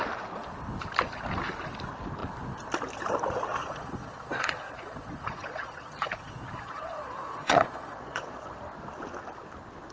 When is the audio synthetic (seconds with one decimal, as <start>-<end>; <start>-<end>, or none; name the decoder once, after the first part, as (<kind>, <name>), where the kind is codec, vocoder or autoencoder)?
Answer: 3.6-8.6 (vocoder, Vocos)